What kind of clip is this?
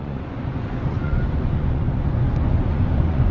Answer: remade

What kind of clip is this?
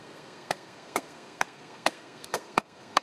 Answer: remade